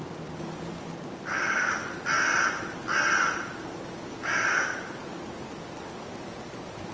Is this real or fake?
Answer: real